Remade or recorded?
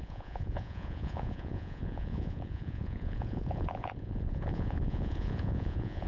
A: remade